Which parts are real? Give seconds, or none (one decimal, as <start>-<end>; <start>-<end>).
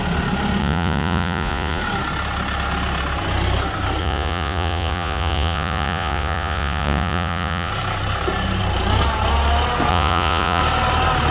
0.0-0.6; 1.8-4.0; 7.7-9.9; 10.6-11.3